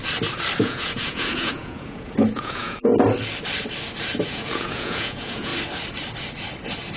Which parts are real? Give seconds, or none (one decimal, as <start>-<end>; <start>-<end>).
0.0-0.6; 2.9-4.3; 5.5-7.0